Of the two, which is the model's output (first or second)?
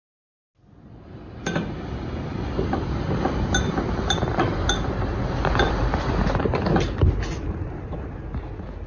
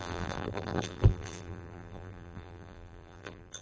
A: second